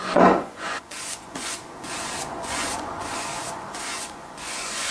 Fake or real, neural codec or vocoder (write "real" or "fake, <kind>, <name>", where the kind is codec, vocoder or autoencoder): fake, vocoder, Vocos